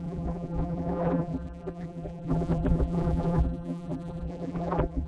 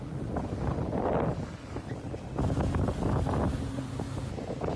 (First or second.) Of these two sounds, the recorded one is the second